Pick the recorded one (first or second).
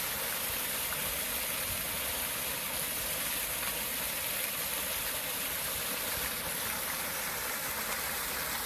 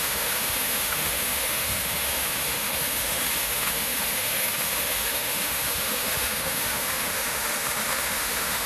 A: first